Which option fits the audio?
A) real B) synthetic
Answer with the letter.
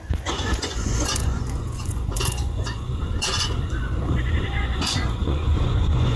B